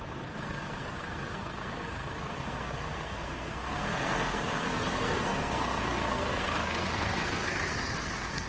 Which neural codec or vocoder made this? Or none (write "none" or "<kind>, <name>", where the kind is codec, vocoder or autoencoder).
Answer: codec, SNAC